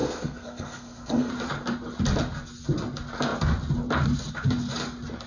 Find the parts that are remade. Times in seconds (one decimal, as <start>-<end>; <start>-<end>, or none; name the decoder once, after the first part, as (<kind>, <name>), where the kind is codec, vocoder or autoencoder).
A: 0.0-1.3 (codec, SNAC)